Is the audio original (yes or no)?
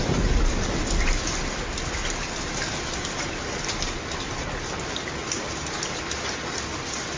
yes